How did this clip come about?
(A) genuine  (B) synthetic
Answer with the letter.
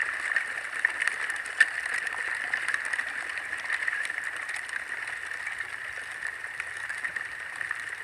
A